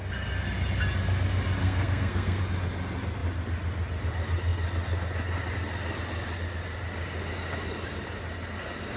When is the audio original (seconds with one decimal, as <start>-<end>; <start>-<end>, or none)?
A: 0.0-1.6; 2.4-9.0